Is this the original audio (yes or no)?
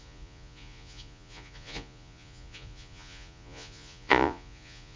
no